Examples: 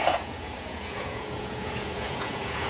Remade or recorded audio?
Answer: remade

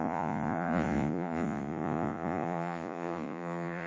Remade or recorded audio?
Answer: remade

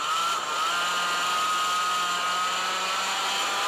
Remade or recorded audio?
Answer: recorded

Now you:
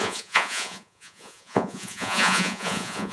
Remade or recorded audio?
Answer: remade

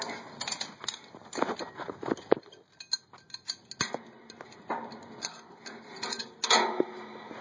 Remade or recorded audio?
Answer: recorded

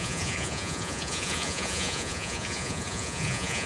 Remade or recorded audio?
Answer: remade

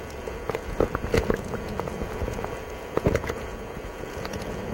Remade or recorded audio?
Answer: remade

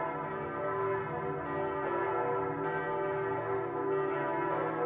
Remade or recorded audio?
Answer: recorded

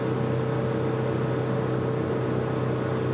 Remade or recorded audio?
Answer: recorded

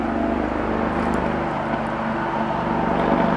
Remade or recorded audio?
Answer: recorded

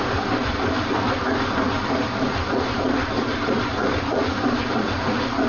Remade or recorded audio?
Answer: remade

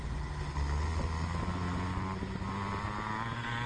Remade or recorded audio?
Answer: recorded